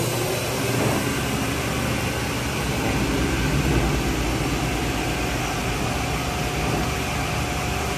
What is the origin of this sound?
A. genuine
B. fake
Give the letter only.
A